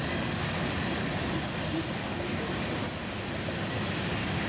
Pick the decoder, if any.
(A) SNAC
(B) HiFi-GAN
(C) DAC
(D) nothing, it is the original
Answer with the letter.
D